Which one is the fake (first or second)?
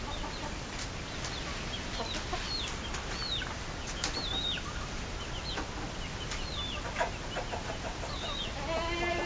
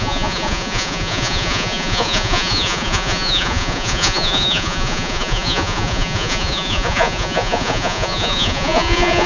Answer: second